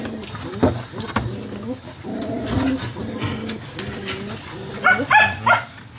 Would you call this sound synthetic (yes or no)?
no